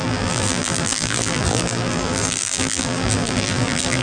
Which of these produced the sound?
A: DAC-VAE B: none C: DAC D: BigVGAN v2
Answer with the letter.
D